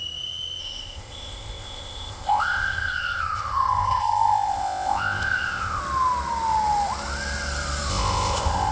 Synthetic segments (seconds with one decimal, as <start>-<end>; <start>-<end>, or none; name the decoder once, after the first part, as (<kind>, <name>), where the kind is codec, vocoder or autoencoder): 0.6-5.8 (codec, ZipCodec); 7.9-8.7